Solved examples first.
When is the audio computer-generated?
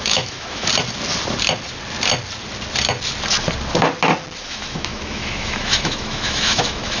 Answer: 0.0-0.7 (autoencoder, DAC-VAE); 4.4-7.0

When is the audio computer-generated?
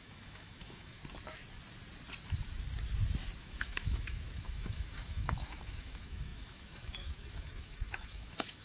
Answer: 0.0-1.0 (autoencoder, DAC-VAE); 3.4-8.6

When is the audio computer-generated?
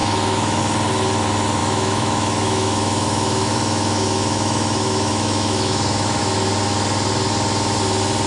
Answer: 0.0-0.6 (autoencoder, DAC-VAE); 1.6-6.2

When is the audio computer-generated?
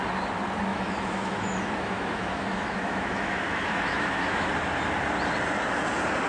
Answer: 0.7-4.5 (autoencoder, DAC-VAE)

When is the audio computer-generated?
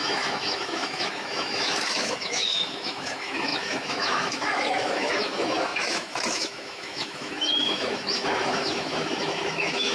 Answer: 0.0-9.9 (autoencoder, DAC-VAE)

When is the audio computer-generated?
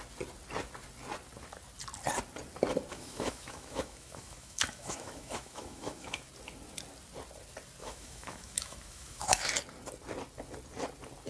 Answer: 2.9-6.2 (autoencoder, DAC-VAE); 7.8-9.5